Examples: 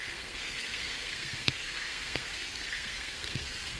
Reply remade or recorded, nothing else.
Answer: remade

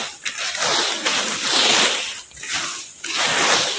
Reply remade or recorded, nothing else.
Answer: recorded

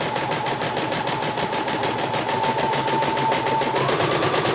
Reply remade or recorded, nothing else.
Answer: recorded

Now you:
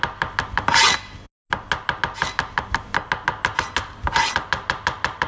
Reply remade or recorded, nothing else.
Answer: recorded